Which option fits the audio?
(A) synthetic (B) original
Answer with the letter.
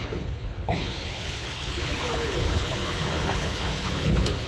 A